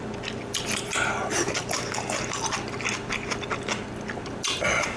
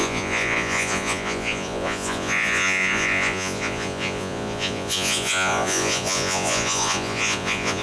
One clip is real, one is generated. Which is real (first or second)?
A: first